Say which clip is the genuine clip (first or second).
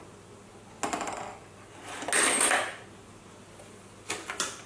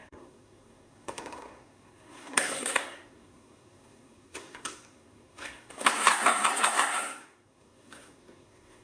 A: first